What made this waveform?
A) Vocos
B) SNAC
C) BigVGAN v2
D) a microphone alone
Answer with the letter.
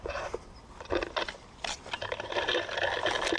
D